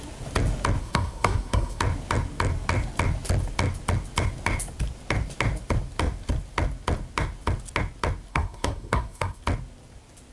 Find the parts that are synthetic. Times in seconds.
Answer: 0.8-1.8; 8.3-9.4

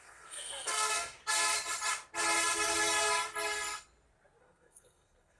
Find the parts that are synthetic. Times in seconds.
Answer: 0.0-1.2; 4.4-5.4

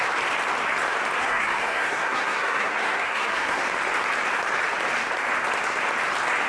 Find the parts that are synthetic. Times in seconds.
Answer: 1.2-3.6

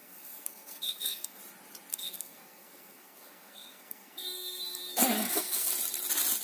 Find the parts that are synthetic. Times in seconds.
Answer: 0.0-1.4; 1.9-5.7

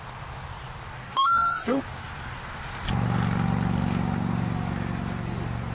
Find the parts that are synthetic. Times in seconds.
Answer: 1.0-1.8

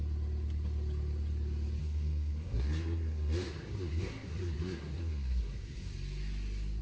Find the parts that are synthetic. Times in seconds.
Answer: 1.8-5.9